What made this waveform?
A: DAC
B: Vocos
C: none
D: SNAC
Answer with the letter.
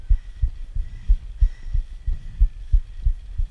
C